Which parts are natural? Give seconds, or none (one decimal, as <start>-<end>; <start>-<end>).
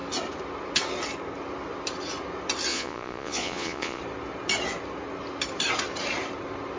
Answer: 0.0-2.7; 4.0-6.8